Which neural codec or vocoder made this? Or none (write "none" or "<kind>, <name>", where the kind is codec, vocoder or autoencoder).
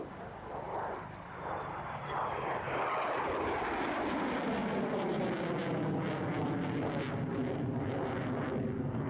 none